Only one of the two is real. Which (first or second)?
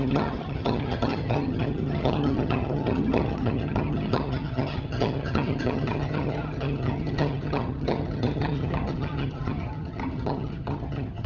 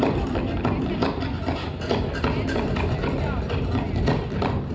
second